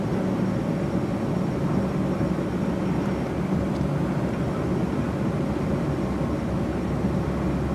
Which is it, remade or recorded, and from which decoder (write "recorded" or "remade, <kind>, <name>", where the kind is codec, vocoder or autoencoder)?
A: recorded